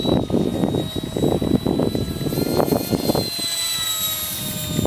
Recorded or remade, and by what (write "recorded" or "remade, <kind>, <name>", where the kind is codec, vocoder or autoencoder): recorded